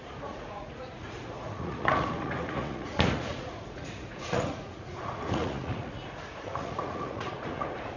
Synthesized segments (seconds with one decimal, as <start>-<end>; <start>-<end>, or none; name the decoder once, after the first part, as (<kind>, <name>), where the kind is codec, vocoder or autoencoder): 0.0-8.0 (vocoder, Vocos)